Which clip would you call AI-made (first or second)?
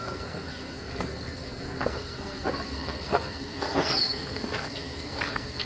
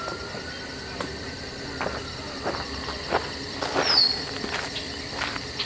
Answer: first